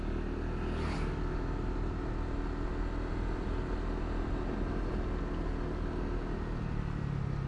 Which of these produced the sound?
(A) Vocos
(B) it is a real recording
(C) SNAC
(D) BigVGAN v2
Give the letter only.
B